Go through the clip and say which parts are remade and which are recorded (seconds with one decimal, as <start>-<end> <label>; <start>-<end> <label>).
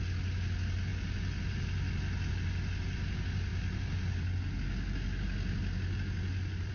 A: 0.0-6.7 recorded